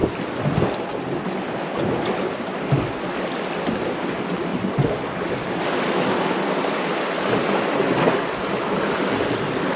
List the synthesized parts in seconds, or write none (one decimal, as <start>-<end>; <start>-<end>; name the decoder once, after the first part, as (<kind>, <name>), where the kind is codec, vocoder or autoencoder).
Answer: 3.5-4.5 (vocoder, BigVGAN v2); 8.7-9.8

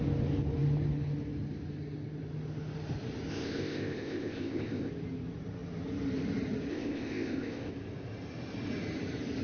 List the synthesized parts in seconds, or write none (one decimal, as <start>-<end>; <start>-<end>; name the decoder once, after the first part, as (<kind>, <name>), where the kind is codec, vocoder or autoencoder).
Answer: 3.3-4.9 (codec, ZipCodec); 6.7-7.7